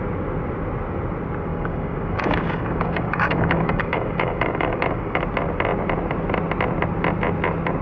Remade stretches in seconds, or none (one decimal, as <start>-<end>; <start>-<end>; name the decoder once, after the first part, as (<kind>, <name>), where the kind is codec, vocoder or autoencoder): 1.5-5.2 (codec, DAC)